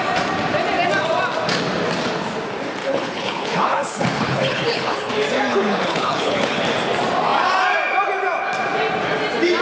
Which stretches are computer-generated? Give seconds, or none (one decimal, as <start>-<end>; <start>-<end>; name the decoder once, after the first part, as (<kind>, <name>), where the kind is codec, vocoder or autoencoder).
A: 2.8-5.1 (codec, HILCodec); 5.5-6.6